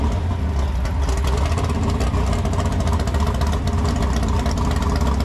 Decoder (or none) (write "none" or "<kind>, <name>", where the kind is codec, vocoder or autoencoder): none